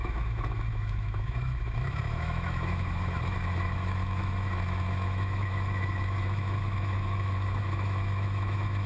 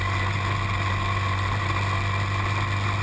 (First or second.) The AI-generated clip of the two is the first